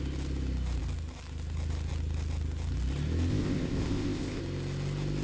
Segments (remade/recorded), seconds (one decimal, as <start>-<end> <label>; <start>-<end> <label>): 0.0-3.3 recorded; 3.3-4.4 remade; 4.4-5.2 recorded